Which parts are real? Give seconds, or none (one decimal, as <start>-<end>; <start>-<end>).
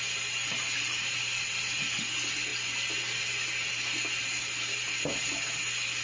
0.0-6.0